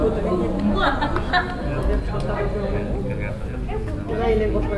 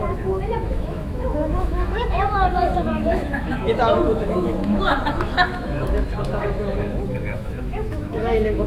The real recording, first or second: first